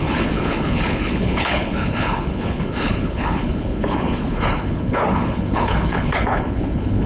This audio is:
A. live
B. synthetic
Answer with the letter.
B